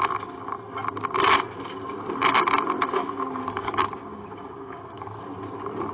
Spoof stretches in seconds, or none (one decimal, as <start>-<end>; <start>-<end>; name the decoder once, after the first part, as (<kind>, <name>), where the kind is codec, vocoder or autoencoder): 3.0-5.2 (codec, DAC)